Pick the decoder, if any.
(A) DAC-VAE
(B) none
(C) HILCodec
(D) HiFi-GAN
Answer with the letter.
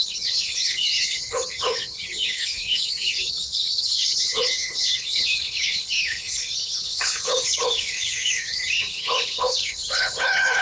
C